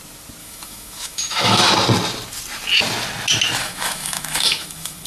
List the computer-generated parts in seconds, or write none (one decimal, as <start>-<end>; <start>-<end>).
0.4-1.7; 3.6-5.1